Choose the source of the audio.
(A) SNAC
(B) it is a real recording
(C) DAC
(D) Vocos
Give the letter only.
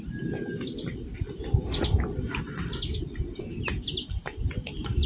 B